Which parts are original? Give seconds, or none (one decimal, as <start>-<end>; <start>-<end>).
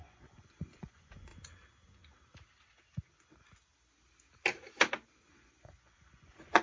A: 1.3-5.3